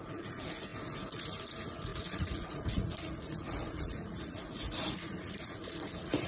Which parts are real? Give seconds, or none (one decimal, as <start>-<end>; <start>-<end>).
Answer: none

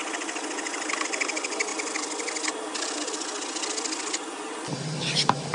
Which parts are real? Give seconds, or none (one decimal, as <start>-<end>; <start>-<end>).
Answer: 0.0-5.5

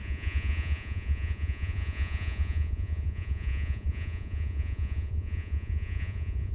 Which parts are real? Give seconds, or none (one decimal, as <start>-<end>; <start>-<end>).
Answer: none